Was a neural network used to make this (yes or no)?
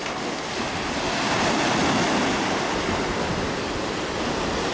no